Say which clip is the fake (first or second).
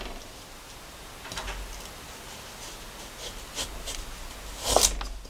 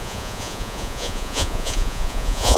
second